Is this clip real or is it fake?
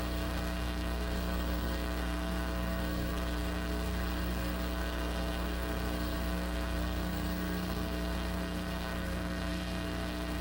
fake